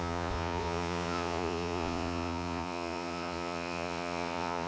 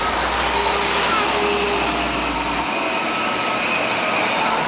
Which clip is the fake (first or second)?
first